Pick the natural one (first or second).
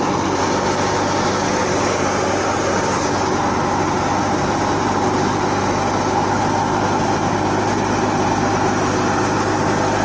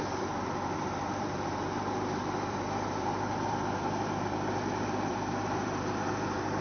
first